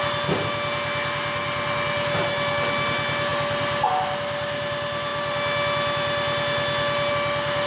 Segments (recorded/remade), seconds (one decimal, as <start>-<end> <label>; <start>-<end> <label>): 0.0-7.7 recorded